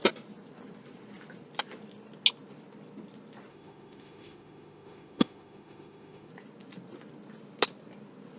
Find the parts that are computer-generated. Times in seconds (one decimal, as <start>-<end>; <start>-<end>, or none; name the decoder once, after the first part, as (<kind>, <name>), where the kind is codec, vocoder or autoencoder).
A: 3.5-6.3 (autoencoder, DAC-VAE)